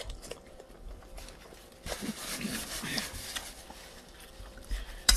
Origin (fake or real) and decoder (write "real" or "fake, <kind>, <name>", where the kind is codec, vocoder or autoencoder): fake, vocoder, BigVGAN v2